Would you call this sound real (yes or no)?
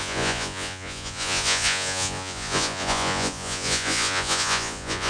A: no